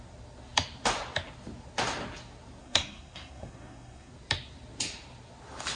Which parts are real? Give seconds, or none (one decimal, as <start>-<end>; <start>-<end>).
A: 0.0-2.6; 4.1-5.8